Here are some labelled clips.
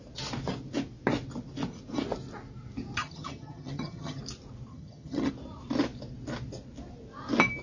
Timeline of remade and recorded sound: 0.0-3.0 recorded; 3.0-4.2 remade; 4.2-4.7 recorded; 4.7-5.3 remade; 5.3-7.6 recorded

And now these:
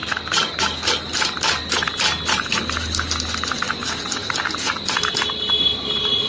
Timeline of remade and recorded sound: 0.0-6.3 recorded

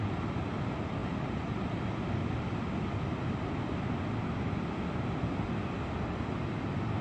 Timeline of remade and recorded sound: 0.0-7.0 recorded